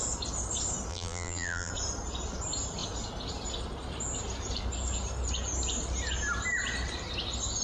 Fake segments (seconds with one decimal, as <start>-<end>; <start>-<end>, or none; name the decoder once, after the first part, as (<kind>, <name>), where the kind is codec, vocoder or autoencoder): 0.9-1.7 (vocoder, BigVGAN v2)